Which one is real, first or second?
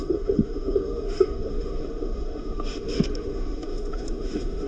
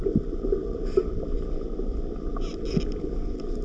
second